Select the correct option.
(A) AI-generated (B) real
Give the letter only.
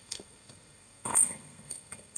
A